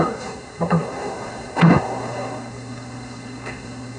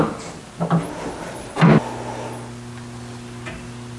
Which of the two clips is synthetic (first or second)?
first